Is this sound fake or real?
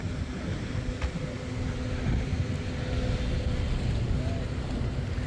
real